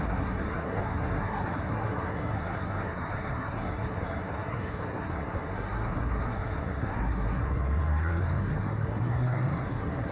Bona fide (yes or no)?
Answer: no